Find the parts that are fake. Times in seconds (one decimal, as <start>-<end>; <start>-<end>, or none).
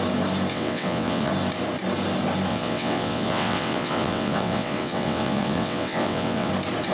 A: 0.5-1.3; 2.5-6.5